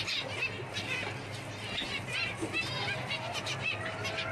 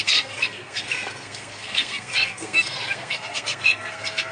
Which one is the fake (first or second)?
second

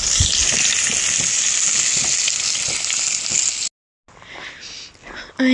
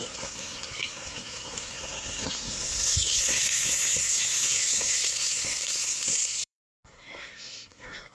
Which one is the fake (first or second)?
second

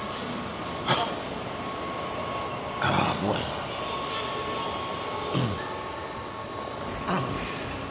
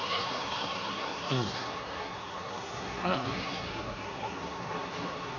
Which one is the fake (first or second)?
second